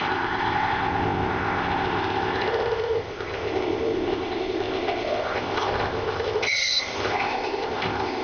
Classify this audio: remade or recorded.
remade